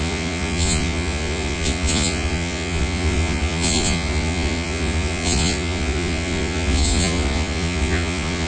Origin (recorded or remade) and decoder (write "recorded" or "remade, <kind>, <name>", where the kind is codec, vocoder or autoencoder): remade, vocoder, Vocos